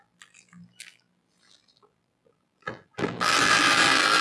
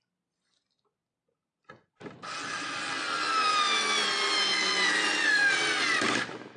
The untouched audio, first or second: second